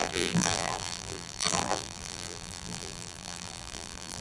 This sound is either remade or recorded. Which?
remade